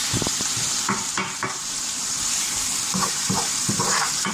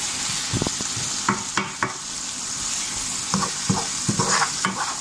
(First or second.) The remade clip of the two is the first